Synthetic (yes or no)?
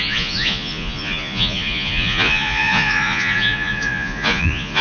yes